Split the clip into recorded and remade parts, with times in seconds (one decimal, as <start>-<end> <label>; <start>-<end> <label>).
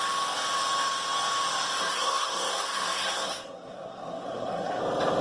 0.0-1.8 recorded; 1.8-4.8 remade; 4.8-5.2 recorded